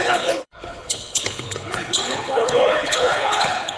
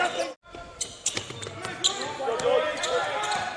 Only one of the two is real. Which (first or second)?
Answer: second